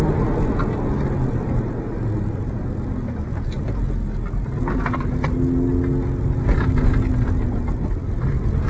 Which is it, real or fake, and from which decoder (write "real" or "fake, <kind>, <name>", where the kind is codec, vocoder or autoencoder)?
real